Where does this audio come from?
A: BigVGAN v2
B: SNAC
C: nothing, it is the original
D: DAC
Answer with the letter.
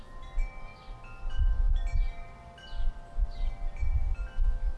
C